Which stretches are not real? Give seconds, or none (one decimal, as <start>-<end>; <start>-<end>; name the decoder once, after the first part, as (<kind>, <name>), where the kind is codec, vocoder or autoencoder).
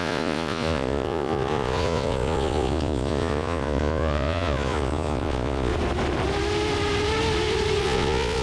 0.0-5.7 (vocoder, Vocos); 7.8-8.4